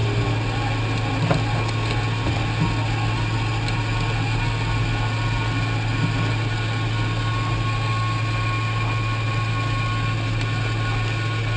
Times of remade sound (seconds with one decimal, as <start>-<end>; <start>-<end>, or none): none